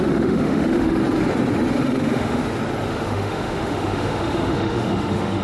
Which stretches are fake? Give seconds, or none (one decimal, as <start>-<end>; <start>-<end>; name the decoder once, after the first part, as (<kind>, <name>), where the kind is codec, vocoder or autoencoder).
0.0-1.0 (autoencoder, DAC-VAE); 1.7-2.4; 2.9-5.4